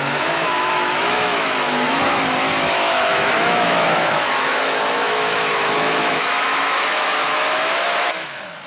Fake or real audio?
fake